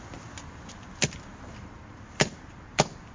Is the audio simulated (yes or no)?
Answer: no